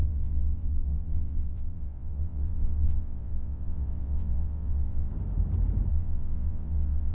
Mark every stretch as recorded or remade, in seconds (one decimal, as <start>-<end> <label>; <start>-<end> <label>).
0.0-5.1 remade; 5.1-5.9 recorded; 5.9-7.1 remade